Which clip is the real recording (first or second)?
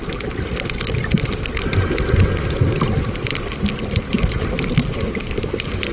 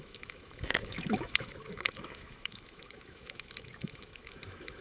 first